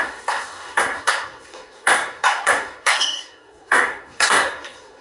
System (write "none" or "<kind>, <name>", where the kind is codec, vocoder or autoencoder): codec, SNAC